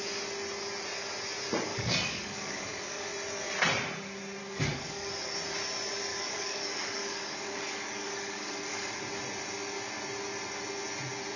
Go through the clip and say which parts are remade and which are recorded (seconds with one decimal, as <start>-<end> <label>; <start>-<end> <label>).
0.0-1.7 recorded; 1.7-3.1 remade; 3.1-4.4 recorded; 4.4-5.1 remade; 5.1-6.1 recorded; 6.1-9.0 remade; 9.0-11.4 recorded